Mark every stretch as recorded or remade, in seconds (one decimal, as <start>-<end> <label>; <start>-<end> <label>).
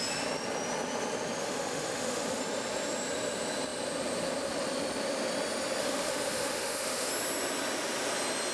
0.0-1.4 recorded; 1.4-2.4 remade; 2.4-5.8 recorded; 5.8-7.1 remade; 7.1-8.5 recorded